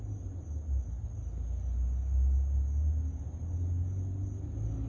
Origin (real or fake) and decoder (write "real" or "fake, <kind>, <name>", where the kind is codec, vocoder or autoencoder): real